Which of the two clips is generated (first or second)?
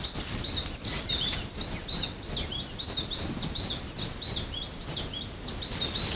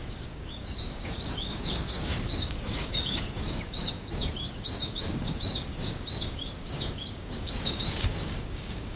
second